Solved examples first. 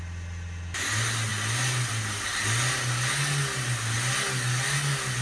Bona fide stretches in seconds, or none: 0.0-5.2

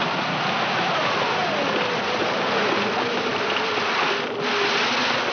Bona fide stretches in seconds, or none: 0.0-5.3

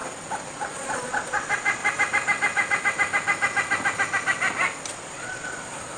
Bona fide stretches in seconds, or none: 0.0-0.5; 1.8-4.9

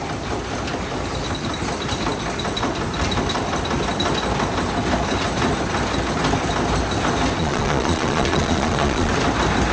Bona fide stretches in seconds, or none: 0.0-7.4; 9.1-9.7